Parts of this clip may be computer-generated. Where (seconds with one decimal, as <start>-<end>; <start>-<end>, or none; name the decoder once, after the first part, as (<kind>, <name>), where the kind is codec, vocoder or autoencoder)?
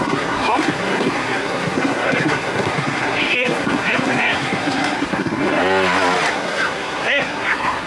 0.0-5.6 (codec, SNAC); 6.3-7.9